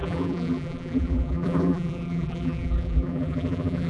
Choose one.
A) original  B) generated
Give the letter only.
B